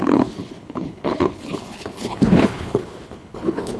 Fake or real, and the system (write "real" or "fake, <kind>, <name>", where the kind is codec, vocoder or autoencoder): fake, codec, HILCodec